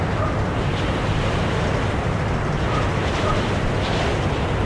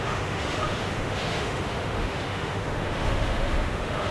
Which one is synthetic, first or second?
second